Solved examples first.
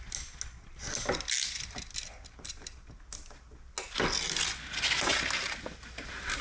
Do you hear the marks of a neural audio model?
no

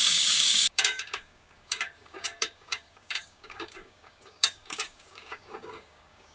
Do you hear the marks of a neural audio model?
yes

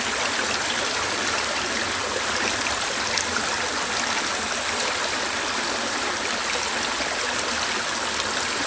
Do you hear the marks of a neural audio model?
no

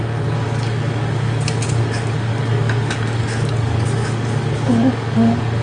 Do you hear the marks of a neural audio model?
yes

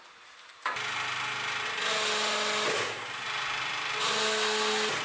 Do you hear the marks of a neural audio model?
no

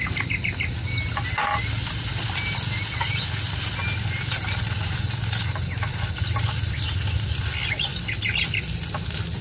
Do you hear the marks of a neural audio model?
no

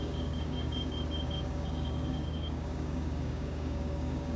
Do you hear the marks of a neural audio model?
yes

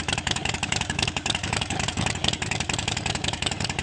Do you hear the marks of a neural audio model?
yes